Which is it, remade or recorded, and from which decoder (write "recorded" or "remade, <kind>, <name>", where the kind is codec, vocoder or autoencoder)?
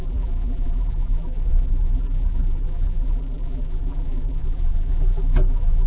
remade, vocoder, BigVGAN v2